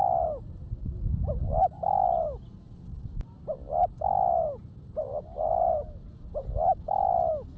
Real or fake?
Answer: real